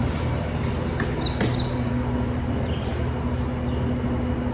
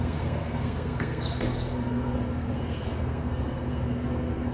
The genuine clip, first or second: first